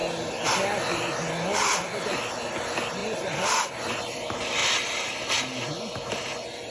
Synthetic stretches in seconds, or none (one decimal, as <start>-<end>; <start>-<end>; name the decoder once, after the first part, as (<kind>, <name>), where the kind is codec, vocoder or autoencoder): none

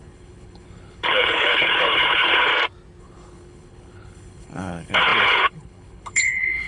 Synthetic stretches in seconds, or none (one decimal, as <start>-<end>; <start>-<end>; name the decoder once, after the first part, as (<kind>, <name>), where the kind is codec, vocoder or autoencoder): 0.0-2.5 (codec, HILCodec); 3.0-6.7